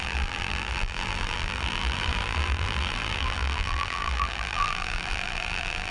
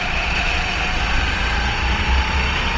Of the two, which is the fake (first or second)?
first